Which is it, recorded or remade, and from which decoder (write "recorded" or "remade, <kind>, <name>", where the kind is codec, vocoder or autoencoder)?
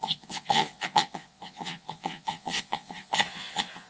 remade, vocoder, Vocos